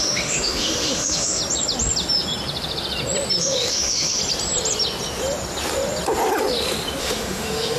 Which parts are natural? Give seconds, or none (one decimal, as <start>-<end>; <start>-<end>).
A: 1.4-3.4; 4.2-7.0